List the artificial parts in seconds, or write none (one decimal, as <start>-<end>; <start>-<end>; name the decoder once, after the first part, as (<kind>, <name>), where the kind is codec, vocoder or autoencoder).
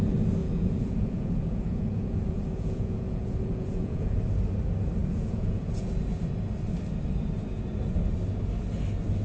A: 0.4-4.2 (vocoder, Vocos); 5.0-5.9